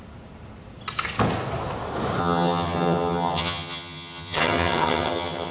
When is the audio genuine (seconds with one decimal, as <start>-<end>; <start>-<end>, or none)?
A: 0.0-2.2